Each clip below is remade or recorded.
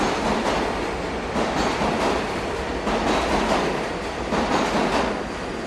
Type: recorded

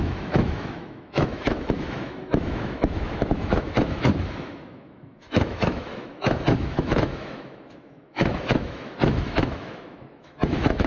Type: remade